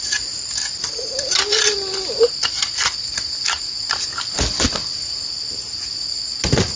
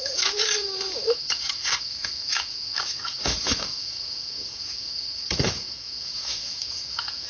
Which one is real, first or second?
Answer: first